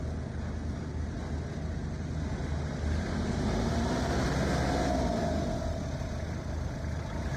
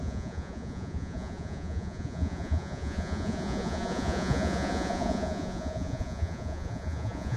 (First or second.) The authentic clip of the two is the first